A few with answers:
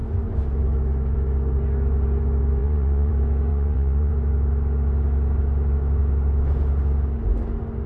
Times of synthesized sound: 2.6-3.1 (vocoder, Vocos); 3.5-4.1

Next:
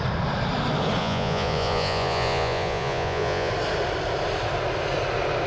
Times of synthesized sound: 1.0-3.5 (vocoder, Vocos)

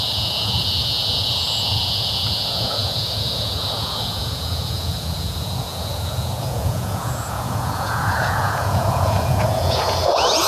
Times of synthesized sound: 0.0-10.5 (vocoder, Vocos)

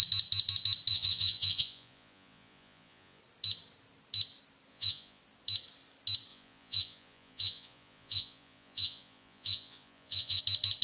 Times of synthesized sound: 0.9-3.2 (vocoder, Vocos); 4.7-5.2; 6.3-10.4

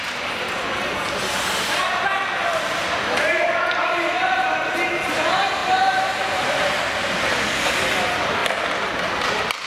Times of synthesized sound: none